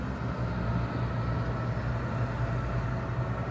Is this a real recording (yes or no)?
yes